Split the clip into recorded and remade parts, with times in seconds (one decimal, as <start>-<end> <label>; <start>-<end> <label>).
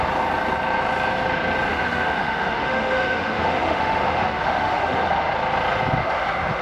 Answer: 0.0-1.7 recorded; 1.7-5.3 remade; 5.3-6.0 recorded; 6.0-6.6 remade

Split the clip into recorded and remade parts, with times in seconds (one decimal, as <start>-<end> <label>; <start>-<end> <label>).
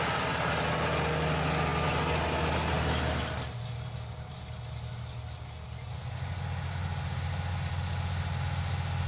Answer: 0.0-9.1 recorded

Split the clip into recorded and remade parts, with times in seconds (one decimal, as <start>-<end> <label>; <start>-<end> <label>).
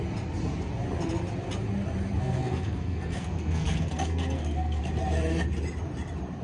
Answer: 0.0-2.2 recorded; 2.2-4.8 remade; 4.8-6.4 recorded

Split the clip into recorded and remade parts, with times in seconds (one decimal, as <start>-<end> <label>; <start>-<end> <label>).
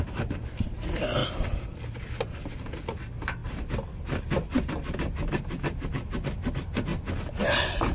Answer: 0.0-3.4 recorded; 3.4-4.7 remade; 4.7-7.9 recorded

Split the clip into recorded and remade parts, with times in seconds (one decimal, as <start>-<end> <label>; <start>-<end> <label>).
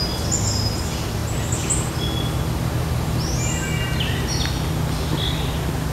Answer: 0.0-5.9 recorded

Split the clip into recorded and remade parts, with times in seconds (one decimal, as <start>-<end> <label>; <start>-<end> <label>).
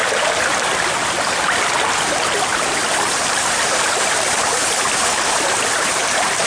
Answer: 0.0-6.5 recorded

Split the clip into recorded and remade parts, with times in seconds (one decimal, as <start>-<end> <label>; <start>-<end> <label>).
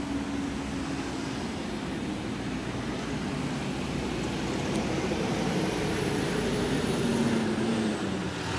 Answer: 0.0-8.6 recorded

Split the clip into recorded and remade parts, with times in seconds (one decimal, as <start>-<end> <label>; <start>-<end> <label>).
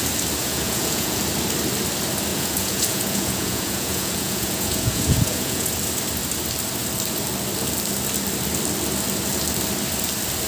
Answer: 0.0-0.4 recorded; 0.4-1.2 remade; 1.2-2.3 recorded; 2.3-5.7 remade; 5.7-10.5 recorded